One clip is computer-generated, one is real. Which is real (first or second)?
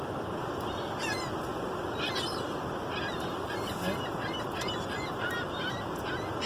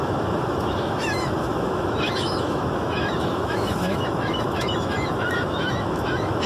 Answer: first